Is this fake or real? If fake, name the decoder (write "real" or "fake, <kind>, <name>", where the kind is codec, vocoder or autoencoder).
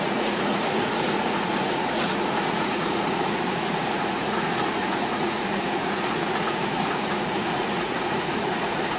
fake, vocoder, Vocos